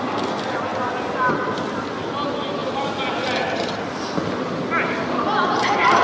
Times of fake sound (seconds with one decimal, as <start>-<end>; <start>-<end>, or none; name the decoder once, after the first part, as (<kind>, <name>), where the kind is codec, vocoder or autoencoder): none